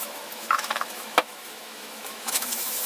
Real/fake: fake